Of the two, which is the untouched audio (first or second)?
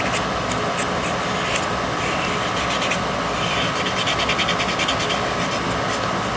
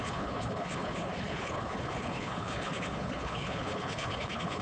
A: first